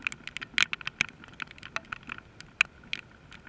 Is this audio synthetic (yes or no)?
no